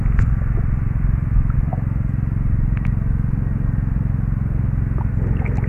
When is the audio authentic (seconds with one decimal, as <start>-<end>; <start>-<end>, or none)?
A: 1.7-5.1